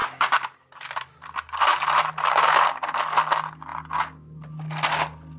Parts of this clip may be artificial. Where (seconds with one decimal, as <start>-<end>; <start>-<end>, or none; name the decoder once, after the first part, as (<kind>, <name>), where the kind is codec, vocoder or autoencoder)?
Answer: none